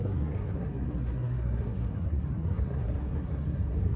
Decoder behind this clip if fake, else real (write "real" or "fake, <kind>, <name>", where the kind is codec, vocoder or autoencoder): fake, codec, SNAC